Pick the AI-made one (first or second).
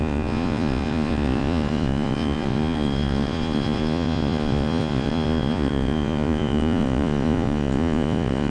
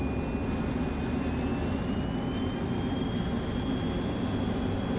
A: first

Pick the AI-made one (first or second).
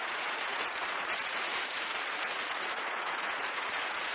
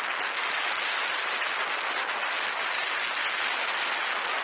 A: first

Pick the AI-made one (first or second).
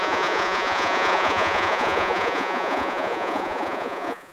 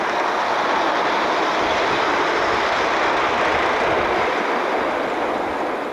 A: first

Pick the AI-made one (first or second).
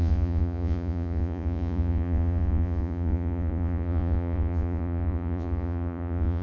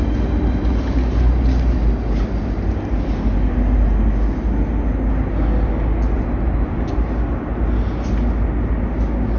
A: first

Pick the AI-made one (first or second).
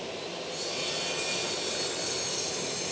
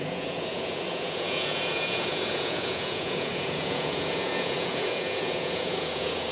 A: second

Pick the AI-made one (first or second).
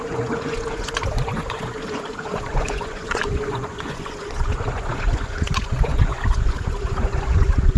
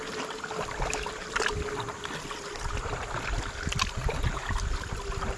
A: first